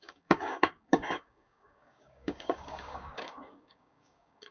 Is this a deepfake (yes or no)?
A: yes